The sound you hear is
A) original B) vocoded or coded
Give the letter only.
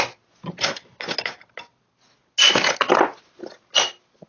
A